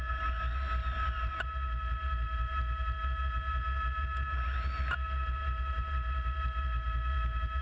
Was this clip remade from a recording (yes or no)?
no